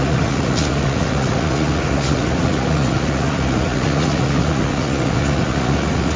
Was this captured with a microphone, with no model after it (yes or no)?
no